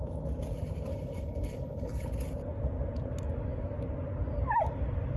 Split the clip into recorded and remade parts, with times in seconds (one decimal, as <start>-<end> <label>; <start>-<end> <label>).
0.0-0.9 recorded; 0.9-2.1 remade; 2.1-5.2 recorded